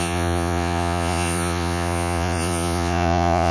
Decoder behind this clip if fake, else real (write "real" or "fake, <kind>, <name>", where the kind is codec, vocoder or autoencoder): fake, vocoder, Vocos